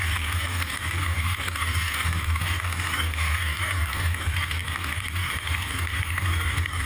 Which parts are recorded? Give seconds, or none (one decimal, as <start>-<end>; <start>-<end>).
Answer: none